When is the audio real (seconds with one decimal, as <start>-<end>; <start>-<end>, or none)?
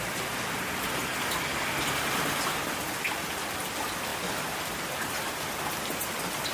0.0-4.1; 5.6-6.5